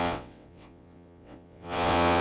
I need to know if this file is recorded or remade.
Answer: remade